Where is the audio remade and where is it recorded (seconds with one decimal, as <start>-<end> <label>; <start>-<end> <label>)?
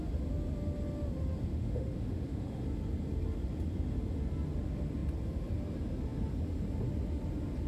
0.0-1.5 recorded; 1.5-2.6 remade; 2.6-7.7 recorded